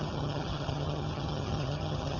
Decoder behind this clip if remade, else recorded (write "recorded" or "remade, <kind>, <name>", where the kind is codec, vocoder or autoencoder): remade, vocoder, HiFi-GAN